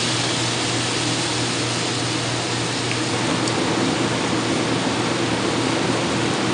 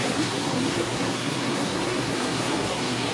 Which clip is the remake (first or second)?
second